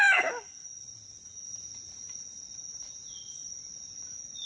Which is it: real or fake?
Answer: real